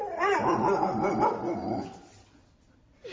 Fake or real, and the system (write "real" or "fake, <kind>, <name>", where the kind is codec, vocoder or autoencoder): real